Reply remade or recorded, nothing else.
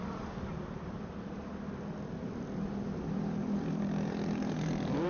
remade